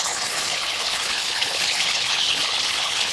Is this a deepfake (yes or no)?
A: yes